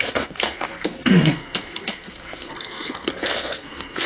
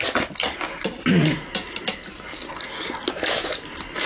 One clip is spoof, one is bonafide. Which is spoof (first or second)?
first